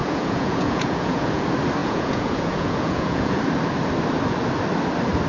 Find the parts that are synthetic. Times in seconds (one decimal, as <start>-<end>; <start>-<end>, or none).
0.0-1.4; 1.8-3.4